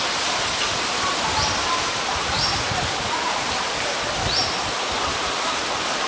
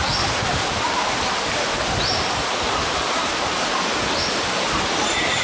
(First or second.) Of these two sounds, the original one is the first